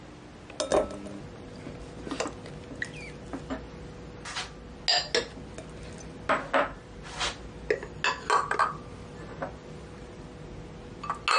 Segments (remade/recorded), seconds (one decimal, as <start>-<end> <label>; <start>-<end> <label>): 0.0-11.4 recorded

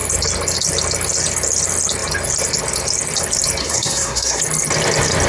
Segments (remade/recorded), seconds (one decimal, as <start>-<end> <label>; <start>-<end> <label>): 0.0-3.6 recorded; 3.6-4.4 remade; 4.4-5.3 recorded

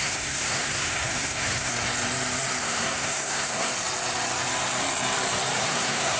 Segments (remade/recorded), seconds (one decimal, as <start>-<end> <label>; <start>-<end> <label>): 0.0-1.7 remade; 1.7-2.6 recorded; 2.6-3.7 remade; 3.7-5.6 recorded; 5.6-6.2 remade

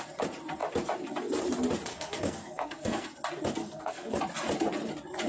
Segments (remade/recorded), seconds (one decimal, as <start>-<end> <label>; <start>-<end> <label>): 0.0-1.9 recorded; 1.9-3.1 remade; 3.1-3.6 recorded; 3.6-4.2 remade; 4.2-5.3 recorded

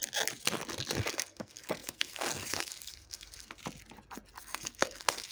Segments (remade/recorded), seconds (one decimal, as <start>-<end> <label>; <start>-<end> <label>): 0.0-1.0 recorded; 1.0-3.6 remade; 3.6-4.4 recorded; 4.4-5.3 remade